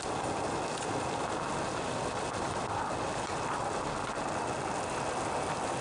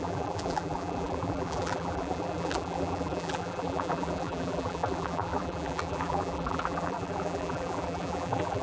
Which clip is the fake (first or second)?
second